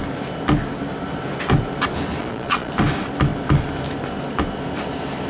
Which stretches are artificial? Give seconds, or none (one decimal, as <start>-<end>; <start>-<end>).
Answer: 2.2-2.7